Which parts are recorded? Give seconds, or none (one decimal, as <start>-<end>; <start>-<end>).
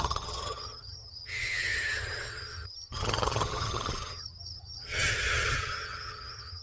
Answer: none